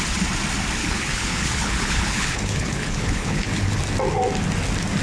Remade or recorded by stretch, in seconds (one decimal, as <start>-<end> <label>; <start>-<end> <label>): 0.0-0.8 recorded; 0.8-3.8 remade; 3.8-5.0 recorded